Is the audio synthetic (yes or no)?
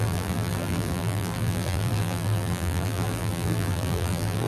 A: yes